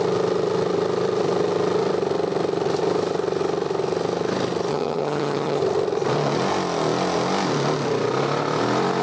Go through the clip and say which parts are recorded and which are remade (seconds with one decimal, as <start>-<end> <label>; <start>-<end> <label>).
0.0-4.7 recorded; 4.7-5.6 remade; 5.6-9.0 recorded